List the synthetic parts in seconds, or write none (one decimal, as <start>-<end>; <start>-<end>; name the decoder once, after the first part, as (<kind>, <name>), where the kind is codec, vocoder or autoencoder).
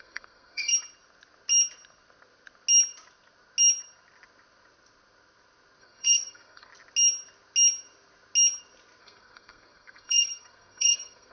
0.0-0.7 (codec, SNAC); 5.8-6.7; 9.0-11.3